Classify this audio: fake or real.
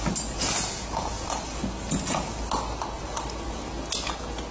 real